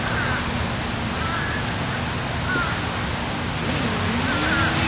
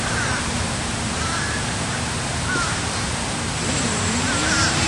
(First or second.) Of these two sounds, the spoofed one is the second